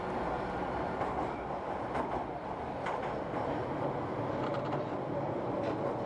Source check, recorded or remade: recorded